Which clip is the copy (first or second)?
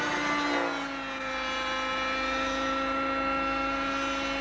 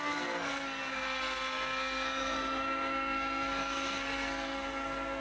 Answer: second